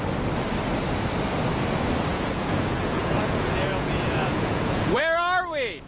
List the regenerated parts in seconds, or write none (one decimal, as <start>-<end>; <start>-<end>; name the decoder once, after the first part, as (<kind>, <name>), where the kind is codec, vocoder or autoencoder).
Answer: 2.1-5.0 (vocoder, Vocos)